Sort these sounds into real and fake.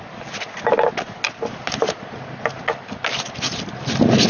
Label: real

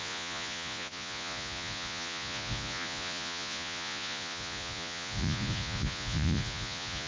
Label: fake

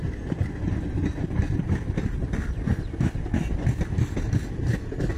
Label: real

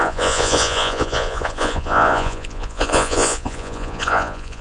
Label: fake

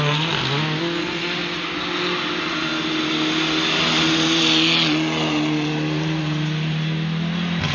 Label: real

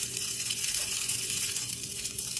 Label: fake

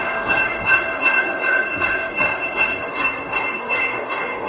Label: fake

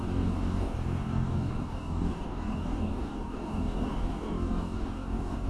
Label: fake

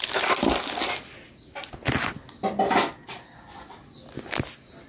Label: real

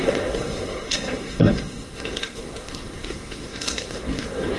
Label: fake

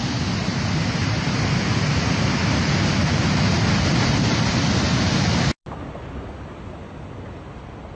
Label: real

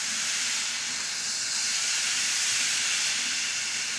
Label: real